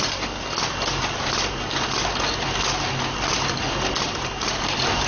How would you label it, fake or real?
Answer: real